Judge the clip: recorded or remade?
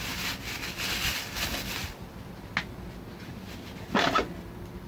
recorded